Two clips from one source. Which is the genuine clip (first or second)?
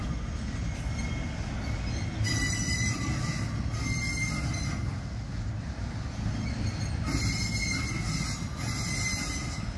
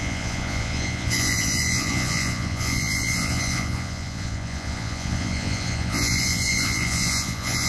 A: first